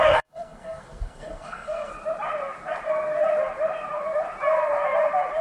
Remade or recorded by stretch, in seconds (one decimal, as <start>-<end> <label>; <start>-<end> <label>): 0.0-1.9 remade; 1.9-5.4 recorded